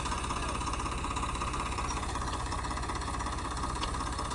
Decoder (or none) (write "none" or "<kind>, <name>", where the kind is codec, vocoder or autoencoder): vocoder, Vocos